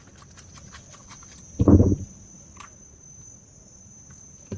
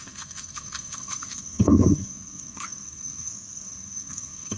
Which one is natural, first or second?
first